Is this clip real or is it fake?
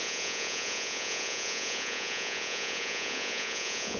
fake